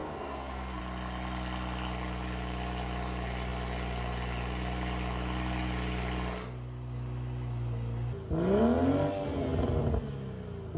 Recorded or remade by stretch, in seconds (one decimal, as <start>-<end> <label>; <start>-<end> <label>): 0.0-0.8 remade; 0.8-10.8 recorded